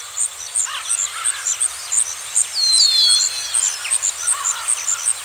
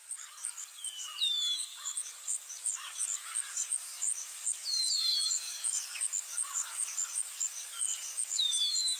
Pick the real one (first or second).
first